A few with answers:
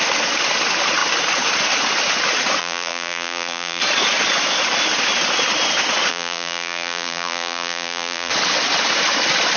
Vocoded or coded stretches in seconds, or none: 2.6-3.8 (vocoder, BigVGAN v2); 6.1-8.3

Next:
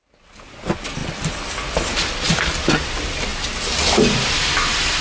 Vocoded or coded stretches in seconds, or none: none

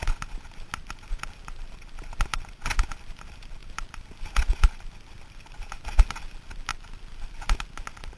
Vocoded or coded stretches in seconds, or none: none